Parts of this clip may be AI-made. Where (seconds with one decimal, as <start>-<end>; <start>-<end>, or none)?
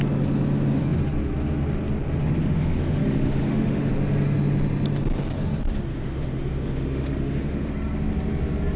2.4-3.9; 5.9-7.7